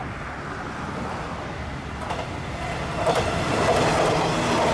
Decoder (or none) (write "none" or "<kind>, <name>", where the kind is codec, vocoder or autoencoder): none